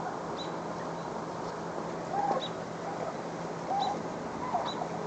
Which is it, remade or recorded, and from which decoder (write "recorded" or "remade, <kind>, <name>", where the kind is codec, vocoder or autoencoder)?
recorded